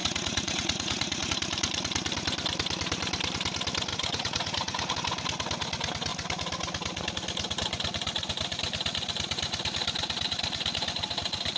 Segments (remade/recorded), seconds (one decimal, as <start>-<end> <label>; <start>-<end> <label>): 0.0-1.3 remade; 1.3-3.9 recorded; 3.9-4.9 remade; 4.9-11.6 recorded